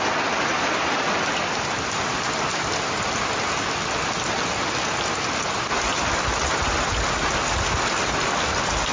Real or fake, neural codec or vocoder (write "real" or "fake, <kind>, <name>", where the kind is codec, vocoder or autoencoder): real